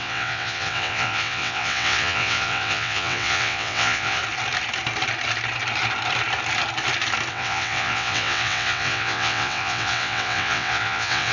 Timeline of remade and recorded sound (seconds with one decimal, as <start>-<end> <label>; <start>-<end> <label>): 0.0-4.2 remade; 4.2-7.3 recorded; 7.3-11.3 remade